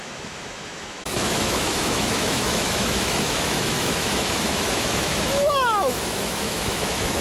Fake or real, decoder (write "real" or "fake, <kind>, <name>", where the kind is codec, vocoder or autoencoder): fake, autoencoder, DAC-VAE